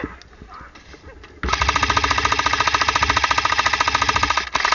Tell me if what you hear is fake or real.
real